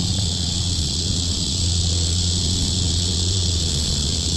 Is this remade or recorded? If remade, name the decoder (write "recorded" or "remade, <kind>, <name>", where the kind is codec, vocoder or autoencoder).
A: remade, vocoder, Vocos